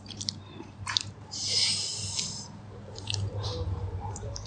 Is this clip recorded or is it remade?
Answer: remade